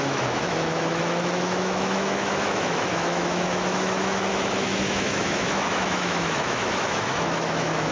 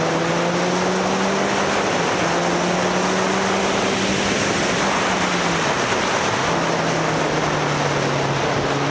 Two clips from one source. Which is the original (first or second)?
second